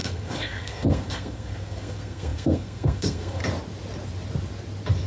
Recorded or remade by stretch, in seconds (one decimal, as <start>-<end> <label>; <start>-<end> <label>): 0.0-3.4 remade; 3.4-5.1 recorded